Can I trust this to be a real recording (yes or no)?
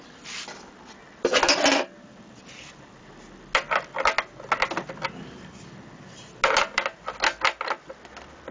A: yes